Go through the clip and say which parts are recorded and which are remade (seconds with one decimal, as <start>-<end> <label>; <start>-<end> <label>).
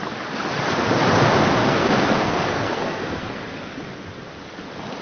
0.0-1.6 recorded; 1.6-3.7 remade; 3.7-5.0 recorded